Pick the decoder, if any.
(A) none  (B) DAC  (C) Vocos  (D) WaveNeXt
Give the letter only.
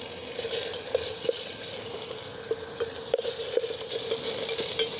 A